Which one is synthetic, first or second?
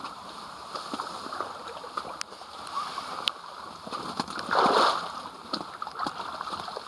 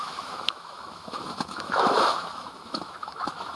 second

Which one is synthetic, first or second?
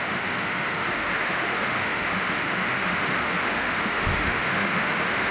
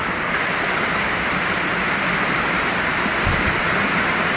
first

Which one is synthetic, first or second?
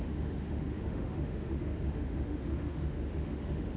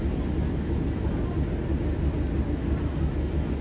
first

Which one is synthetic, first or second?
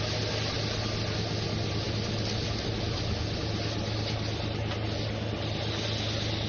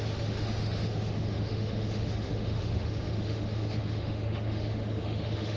second